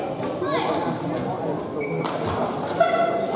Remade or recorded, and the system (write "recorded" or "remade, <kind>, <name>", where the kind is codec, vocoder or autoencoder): recorded